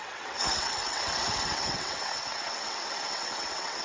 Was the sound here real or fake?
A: fake